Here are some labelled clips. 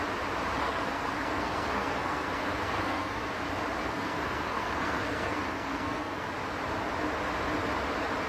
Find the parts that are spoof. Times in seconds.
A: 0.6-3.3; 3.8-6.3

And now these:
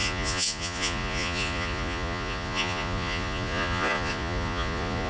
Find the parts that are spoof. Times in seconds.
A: 0.0-5.1

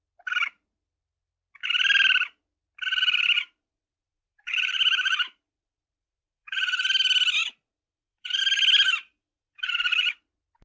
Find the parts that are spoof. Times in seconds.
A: 2.9-6.9; 7.4-8.4; 9.2-10.1

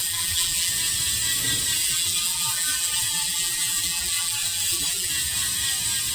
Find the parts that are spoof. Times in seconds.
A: 0.0-0.7; 1.8-5.1

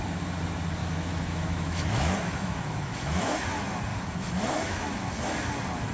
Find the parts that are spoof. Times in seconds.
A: 0.8-3.3; 3.9-5.1

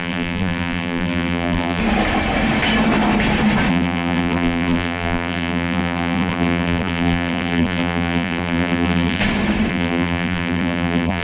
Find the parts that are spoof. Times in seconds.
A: 0.0-1.8; 3.7-9.2; 9.7-11.2

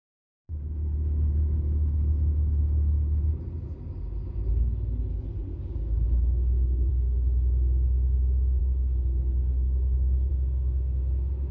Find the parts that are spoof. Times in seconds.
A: 5.1-6.9; 8.6-10.3